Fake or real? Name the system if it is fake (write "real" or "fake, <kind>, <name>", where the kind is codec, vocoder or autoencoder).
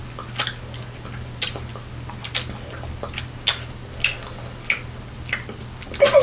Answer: real